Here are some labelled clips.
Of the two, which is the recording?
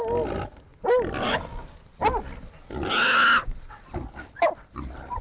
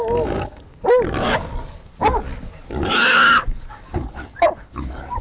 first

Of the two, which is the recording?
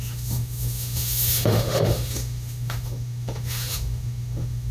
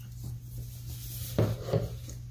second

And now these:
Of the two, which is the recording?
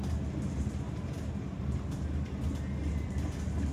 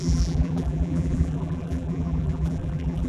first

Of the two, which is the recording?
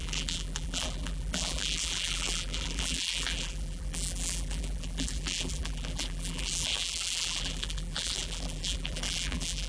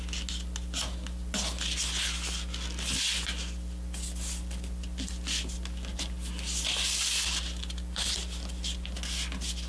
second